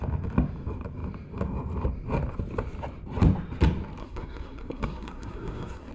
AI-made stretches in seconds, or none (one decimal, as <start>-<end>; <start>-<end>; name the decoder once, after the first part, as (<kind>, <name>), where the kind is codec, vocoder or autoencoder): 4.0-5.9 (codec, SNAC)